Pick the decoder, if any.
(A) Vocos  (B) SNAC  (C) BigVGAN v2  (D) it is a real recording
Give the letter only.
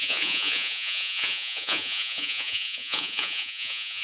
A